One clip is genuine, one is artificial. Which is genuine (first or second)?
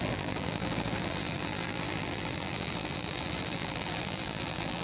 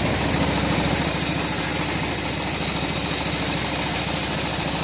second